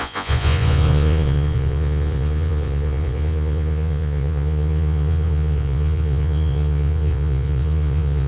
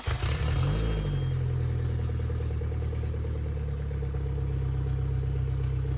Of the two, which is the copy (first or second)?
first